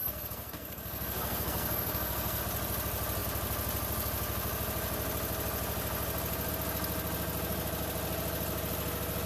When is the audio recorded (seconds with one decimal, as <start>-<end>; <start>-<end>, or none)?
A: 2.4-9.3